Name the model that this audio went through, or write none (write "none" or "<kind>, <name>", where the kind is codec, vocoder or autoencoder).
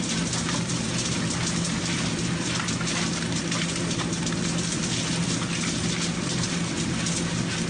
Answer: none